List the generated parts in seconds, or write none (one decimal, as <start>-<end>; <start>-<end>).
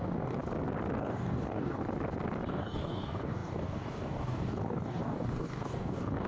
0.0-0.4; 1.0-1.8; 2.5-6.3